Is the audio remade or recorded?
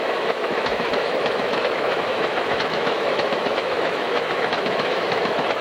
remade